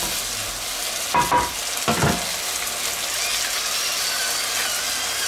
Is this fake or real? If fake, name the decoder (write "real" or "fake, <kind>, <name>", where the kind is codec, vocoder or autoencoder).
real